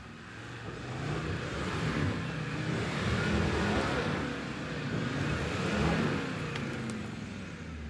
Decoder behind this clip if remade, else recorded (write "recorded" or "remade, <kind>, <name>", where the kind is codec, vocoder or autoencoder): recorded